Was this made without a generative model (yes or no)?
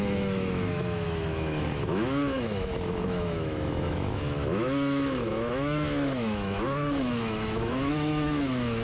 no